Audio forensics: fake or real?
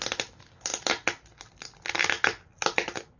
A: real